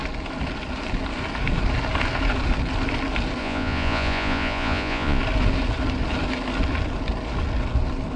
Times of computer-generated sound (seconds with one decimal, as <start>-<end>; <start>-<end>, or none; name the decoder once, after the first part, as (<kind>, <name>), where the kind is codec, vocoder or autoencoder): 3.4-5.2 (vocoder, Vocos)